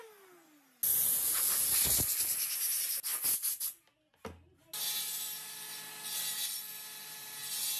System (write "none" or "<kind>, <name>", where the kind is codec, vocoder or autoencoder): none